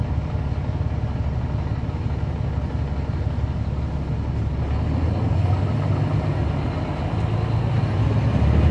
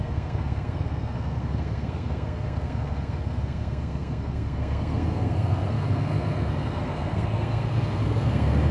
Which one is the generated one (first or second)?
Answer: second